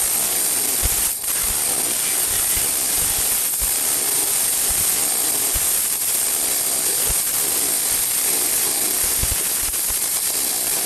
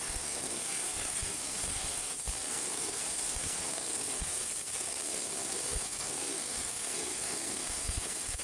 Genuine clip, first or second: first